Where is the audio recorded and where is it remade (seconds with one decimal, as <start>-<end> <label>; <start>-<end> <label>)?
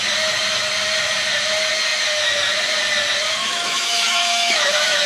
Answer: 0.0-3.4 recorded; 3.4-5.1 remade